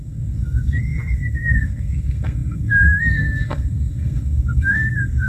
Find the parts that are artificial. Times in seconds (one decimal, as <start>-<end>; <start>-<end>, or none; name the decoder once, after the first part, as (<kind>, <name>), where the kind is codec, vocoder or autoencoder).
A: 0.0-5.3 (codec, SNAC)

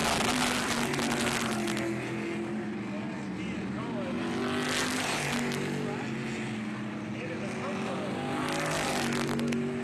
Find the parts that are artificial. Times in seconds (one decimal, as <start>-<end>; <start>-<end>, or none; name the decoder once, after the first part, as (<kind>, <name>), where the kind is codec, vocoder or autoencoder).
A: none

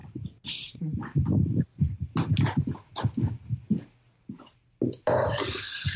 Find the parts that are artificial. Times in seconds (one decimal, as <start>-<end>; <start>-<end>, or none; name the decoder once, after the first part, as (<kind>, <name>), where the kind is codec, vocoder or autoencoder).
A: none